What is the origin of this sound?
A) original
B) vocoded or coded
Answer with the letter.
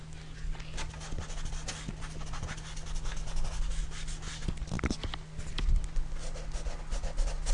A